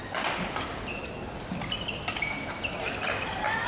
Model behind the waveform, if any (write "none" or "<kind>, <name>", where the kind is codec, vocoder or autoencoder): none